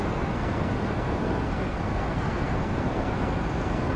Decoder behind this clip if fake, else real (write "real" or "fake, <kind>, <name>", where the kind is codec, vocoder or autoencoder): fake, codec, SNAC